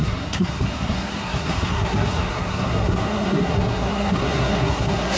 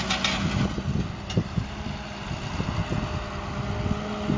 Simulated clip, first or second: first